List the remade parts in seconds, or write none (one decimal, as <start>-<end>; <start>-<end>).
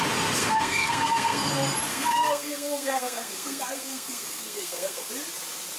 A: 0.4-1.5; 1.9-5.1